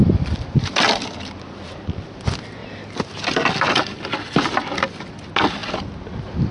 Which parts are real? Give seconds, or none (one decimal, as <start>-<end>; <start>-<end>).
0.0-6.5